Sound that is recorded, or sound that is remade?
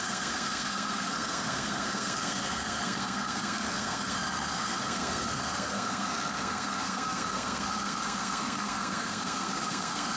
remade